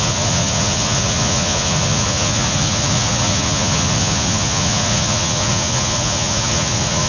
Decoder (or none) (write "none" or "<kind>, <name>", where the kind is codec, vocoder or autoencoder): vocoder, Vocos